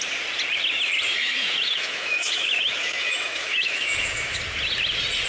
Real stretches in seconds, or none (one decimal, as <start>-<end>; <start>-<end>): 0.0-1.2; 4.4-5.3